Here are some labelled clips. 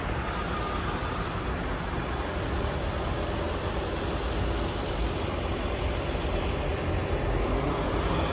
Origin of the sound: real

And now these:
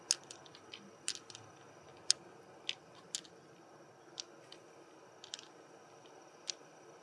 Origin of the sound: real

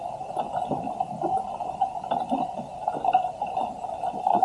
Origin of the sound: real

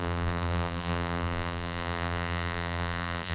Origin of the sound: fake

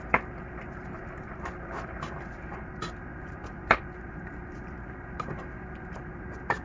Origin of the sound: fake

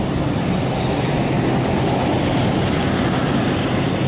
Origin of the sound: fake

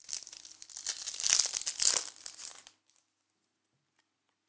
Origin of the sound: real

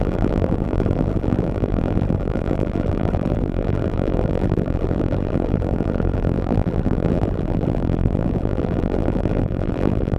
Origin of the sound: fake